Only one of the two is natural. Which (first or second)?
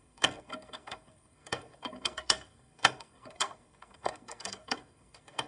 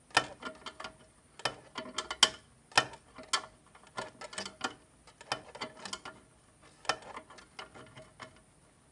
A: second